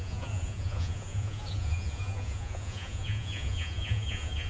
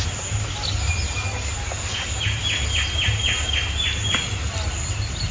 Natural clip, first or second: second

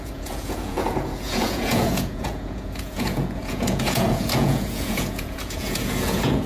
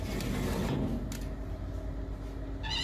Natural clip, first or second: second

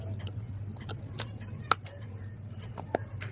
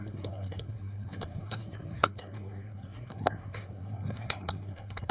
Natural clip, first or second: first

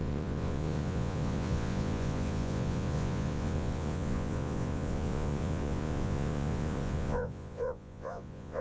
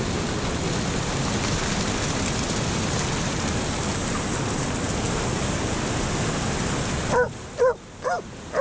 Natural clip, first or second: second